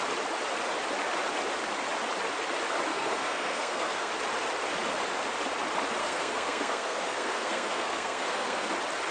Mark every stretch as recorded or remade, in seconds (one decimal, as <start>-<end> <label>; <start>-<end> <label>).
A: 0.0-2.9 recorded; 2.9-4.1 remade; 4.1-6.0 recorded; 6.0-8.7 remade; 8.7-9.1 recorded